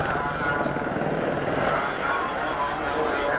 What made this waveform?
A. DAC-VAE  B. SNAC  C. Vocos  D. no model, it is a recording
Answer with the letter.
D